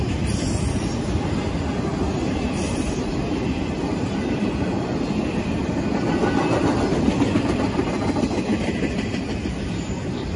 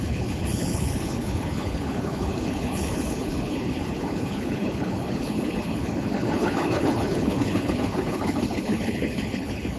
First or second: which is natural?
first